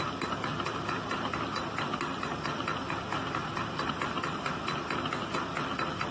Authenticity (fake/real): real